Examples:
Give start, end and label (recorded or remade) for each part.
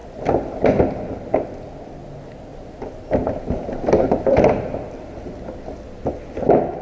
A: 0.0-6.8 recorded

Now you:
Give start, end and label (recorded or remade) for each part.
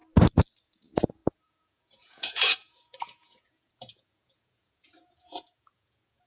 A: 0.0-0.6 recorded; 0.6-6.3 remade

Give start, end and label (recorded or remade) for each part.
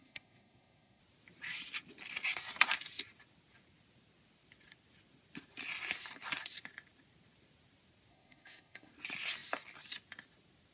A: 0.0-1.0 remade; 1.0-8.1 recorded; 8.1-8.9 remade; 8.9-10.7 recorded